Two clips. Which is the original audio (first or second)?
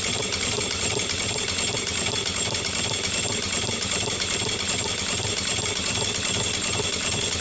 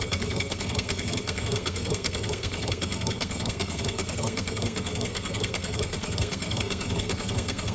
first